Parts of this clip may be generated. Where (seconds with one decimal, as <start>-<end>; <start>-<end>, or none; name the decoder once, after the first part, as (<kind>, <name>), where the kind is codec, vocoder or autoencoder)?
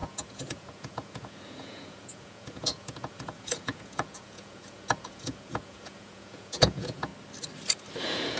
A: 0.0-7.1 (vocoder, Vocos); 8.0-8.4